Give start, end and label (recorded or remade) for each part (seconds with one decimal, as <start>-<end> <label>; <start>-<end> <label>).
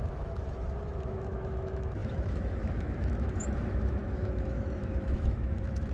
0.0-5.9 remade